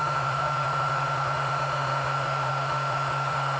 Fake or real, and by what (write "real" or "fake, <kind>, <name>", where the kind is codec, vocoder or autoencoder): fake, autoencoder, DAC-VAE